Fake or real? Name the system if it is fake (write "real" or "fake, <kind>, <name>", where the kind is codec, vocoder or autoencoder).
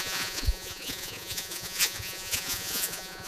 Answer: fake, vocoder, Vocos